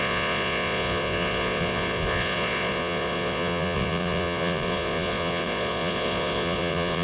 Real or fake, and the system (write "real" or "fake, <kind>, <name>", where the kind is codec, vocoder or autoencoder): fake, vocoder, Vocos